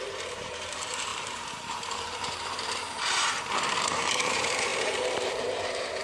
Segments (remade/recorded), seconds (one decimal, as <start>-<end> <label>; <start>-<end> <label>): 0.0-6.0 remade